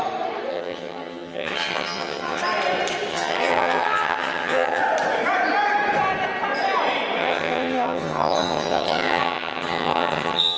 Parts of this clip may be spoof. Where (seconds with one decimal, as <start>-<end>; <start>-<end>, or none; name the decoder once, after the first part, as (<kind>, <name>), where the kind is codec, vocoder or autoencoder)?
0.5-2.4 (vocoder, HiFi-GAN); 3.1-4.8; 7.2-10.6